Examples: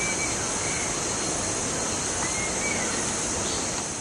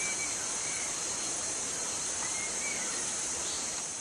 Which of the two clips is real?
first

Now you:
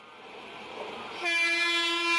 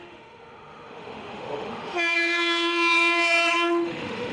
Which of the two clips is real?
first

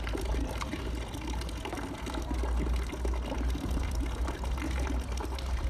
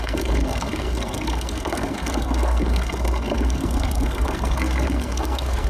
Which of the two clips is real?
first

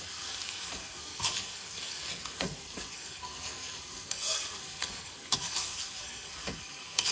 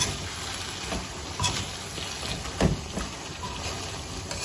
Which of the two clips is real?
second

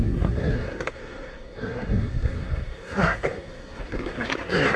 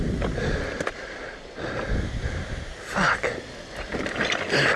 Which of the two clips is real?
second